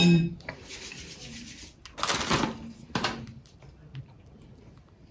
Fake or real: real